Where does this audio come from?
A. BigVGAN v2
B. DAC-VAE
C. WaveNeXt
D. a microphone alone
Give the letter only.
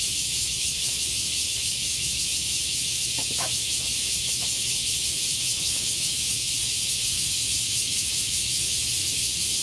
B